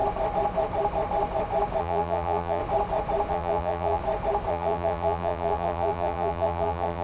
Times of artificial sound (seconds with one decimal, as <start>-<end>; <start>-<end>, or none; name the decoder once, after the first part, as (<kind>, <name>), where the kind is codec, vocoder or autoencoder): 1.8-2.6 (vocoder, BigVGAN v2); 3.3-4.0; 4.5-7.0